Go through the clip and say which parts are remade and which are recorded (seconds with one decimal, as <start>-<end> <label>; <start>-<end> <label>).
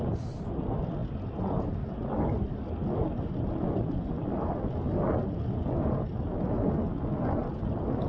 0.0-8.1 recorded